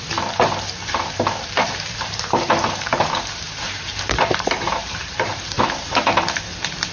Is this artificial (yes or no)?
yes